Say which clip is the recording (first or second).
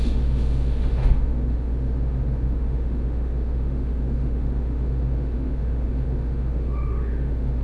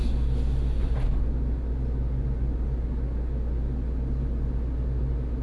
second